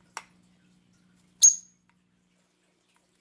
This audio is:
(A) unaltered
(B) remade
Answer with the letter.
A